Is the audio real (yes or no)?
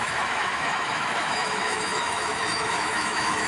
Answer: no